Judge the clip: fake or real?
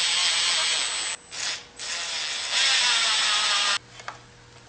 real